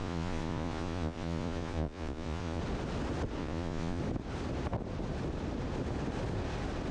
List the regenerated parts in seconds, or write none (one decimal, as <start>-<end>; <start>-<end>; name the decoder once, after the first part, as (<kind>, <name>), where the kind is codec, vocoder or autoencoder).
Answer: 0.0-2.6 (vocoder, Vocos); 3.4-4.0